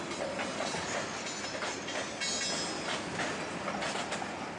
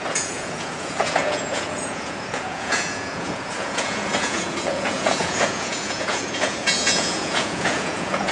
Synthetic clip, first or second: second